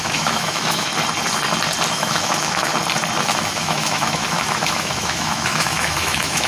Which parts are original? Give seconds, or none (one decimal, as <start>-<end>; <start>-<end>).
0.9-1.9; 2.7-3.2